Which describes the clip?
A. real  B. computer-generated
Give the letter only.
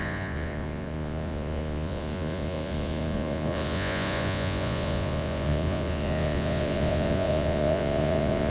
B